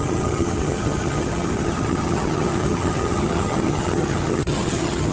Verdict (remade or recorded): remade